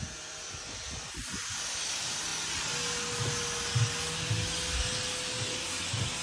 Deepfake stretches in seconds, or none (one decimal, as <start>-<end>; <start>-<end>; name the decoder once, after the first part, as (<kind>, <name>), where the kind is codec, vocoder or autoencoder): none

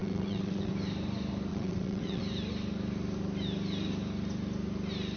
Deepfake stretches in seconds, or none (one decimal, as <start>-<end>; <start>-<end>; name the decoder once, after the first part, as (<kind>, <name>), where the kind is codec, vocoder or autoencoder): 0.0-0.7 (vocoder, WaveNeXt); 1.5-2.2

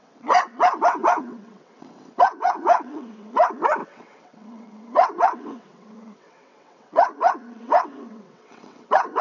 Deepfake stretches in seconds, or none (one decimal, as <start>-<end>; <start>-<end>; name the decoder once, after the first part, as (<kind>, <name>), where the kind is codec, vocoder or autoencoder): 0.0-9.2 (vocoder, WaveNeXt)

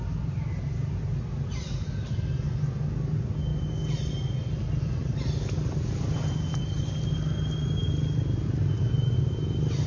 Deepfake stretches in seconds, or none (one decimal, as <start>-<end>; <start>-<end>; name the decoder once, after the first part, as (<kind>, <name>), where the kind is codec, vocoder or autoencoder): none

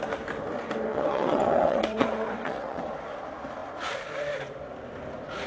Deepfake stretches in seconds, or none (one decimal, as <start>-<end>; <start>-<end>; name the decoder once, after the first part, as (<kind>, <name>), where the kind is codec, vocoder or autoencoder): 0.9-2.8 (vocoder, WaveNeXt)

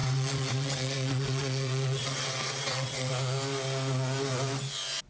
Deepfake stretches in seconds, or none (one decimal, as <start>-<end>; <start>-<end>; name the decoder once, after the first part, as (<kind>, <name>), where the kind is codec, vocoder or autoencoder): 0.0-3.1 (vocoder, WaveNeXt)

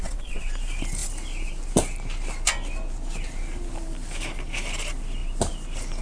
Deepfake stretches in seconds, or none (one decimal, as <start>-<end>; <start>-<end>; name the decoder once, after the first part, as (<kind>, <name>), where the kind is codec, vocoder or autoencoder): 0.0-0.5 (vocoder, WaveNeXt)